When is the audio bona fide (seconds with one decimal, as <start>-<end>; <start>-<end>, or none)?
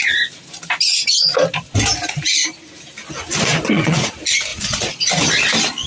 0.0-3.5; 4.1-4.5; 5.1-5.9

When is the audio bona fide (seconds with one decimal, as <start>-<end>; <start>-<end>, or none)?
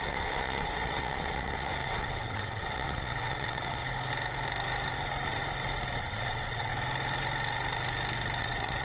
3.8-6.0; 6.7-8.4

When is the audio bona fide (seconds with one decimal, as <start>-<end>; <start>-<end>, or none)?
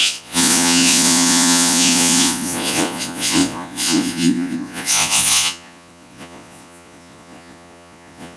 none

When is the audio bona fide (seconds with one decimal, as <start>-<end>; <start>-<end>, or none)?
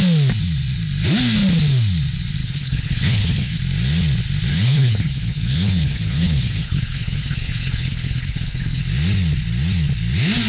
0.0-2.4; 3.6-4.5; 8.8-10.5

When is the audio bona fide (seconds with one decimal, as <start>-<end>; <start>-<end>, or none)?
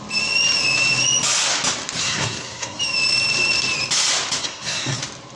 0.0-2.0; 2.8-4.4; 5.0-5.4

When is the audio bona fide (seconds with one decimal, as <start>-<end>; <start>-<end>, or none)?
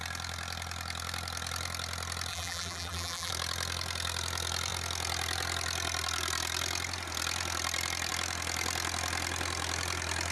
0.0-2.3; 3.3-10.3